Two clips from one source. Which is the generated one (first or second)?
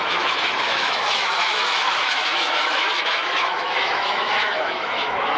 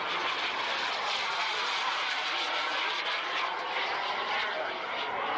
first